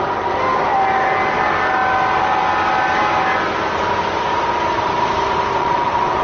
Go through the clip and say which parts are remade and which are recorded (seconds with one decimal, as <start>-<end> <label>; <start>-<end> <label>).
0.0-5.6 recorded; 5.6-6.2 remade